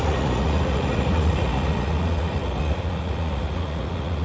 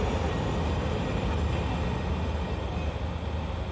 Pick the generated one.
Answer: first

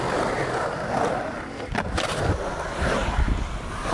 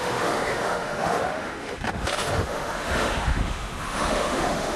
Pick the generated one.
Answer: second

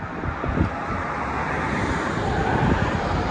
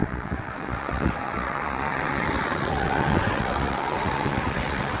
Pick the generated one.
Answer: second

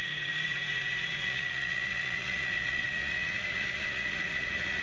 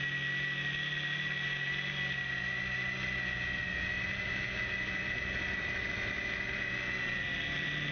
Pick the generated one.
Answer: first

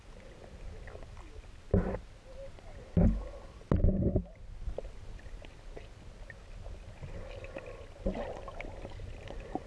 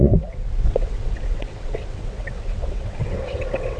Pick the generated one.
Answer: second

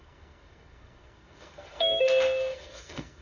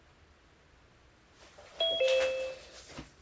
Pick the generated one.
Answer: first